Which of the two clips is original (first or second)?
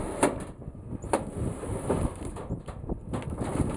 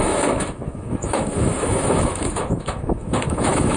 first